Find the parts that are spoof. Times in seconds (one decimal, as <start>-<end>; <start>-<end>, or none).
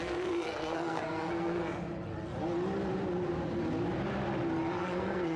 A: 0.0-1.6; 4.8-5.4